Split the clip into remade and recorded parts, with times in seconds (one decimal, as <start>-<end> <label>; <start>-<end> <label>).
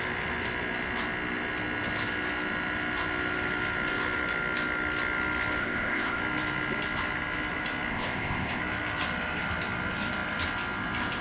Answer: 0.0-5.6 recorded; 5.6-6.2 remade; 6.2-7.9 recorded; 7.9-8.6 remade; 8.6-11.2 recorded